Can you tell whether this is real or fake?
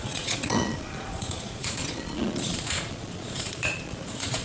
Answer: fake